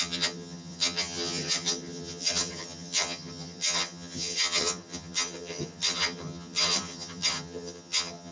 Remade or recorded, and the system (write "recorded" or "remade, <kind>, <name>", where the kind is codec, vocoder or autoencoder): remade, vocoder, HiFi-GAN